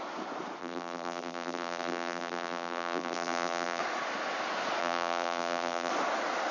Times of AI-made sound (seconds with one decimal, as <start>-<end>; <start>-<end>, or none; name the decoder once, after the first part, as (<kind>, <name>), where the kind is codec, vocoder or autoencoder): 0.6-3.8 (vocoder, BigVGAN v2); 4.8-5.9

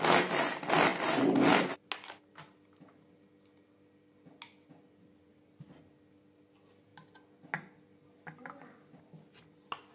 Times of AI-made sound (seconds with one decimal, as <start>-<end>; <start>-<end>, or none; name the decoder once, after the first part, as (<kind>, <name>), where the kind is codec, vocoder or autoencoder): none

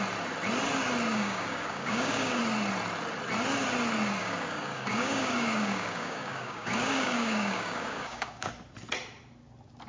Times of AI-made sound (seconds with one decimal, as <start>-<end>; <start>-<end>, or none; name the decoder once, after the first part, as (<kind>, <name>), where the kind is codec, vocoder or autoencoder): 1.1-2.4 (codec, DAC); 4.2-8.5